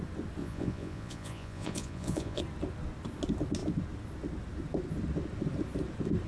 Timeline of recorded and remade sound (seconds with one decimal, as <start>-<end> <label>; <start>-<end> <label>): 0.0-0.4 recorded; 0.4-2.4 remade; 2.4-6.3 recorded